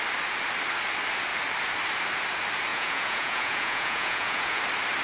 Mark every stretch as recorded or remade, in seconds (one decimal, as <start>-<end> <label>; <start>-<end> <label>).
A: 0.0-2.7 recorded; 2.7-4.6 remade; 4.6-5.0 recorded